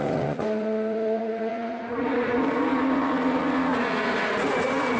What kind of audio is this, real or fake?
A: fake